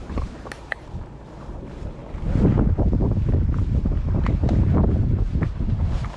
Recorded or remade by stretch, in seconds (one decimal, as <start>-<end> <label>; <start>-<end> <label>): 0.0-2.0 remade; 2.0-4.0 recorded; 4.0-6.2 remade